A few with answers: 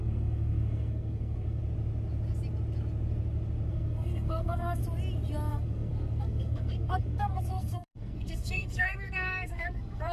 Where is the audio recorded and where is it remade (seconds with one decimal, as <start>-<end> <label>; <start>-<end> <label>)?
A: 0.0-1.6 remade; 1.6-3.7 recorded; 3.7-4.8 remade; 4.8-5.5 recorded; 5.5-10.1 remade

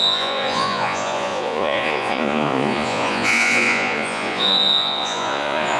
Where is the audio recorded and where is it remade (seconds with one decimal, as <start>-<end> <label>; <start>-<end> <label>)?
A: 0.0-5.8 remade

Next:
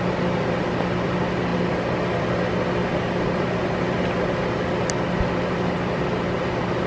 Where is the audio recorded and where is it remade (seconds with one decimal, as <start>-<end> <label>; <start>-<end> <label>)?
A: 0.0-6.9 recorded

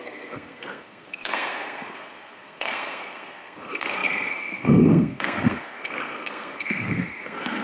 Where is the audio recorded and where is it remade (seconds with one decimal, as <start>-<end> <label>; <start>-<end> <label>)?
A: 0.0-7.6 remade

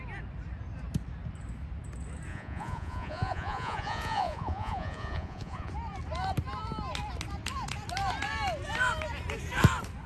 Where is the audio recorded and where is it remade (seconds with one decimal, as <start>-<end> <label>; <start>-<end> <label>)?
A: 0.0-2.3 recorded; 2.3-5.7 remade; 5.7-10.1 recorded

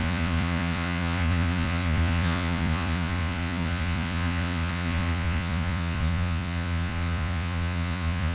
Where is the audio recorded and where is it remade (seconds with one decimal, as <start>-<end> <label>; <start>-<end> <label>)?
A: 0.0-8.3 remade